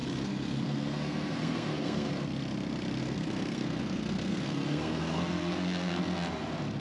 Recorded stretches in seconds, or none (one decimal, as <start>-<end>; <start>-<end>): 2.1-3.0; 6.0-6.8